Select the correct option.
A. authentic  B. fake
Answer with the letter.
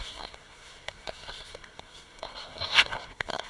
B